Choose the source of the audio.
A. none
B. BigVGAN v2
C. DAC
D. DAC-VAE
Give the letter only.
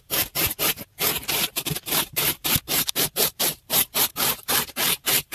B